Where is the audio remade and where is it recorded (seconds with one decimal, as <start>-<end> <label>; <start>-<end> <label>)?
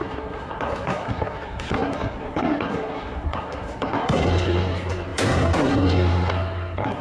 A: 0.0-7.0 remade